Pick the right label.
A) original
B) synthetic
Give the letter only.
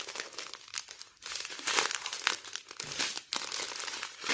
A